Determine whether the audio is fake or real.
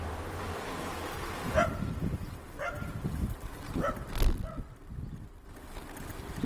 real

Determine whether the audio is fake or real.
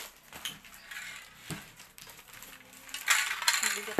real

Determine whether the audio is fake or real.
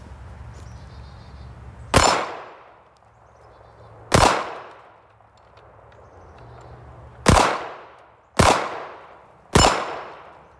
real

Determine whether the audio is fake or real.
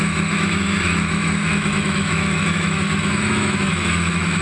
fake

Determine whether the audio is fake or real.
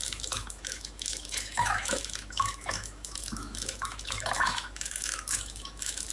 fake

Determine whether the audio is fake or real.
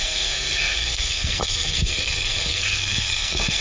fake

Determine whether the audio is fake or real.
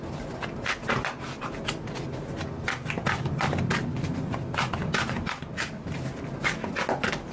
real